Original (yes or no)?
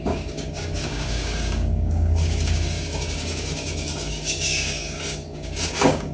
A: no